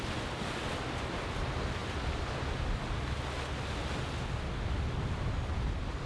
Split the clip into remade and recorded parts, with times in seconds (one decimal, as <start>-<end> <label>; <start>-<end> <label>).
0.0-6.1 recorded